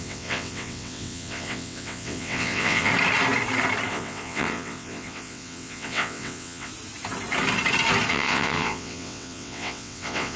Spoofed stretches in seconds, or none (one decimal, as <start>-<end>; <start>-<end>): 0.0-2.9; 3.9-6.7; 8.1-10.4